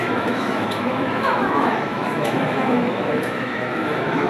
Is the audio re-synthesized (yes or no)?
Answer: yes